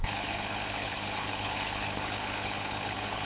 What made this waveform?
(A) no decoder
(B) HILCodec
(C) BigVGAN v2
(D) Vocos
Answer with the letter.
B